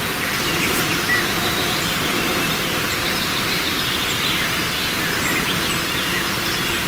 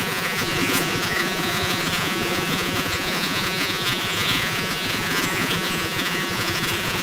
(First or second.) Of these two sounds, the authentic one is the first